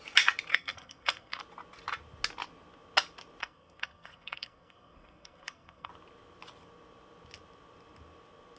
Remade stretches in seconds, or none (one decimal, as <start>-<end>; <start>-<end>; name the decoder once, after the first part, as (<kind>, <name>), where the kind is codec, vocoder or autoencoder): 0.5-1.4 (codec, SNAC); 3.4-5.9